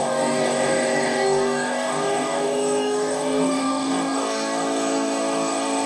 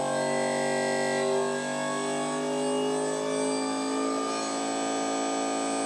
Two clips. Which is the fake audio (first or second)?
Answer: first